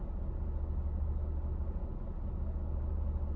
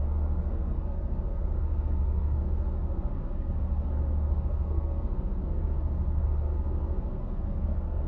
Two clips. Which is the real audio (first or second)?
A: first